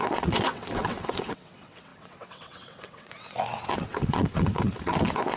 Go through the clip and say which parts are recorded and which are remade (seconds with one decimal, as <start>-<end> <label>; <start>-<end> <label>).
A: 0.0-5.4 remade